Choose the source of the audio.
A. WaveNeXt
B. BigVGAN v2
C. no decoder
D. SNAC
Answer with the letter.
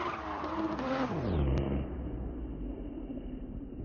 C